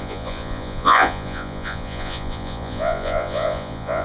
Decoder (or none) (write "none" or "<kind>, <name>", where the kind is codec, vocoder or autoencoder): vocoder, Vocos